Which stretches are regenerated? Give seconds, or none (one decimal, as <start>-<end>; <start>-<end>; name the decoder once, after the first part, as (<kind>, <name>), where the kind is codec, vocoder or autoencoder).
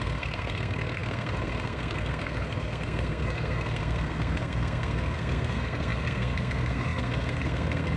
0.0-8.0 (codec, SNAC)